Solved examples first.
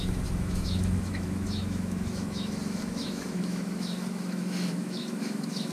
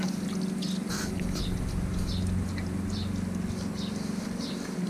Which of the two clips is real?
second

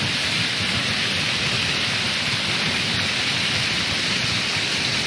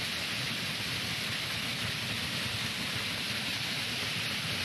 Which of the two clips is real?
first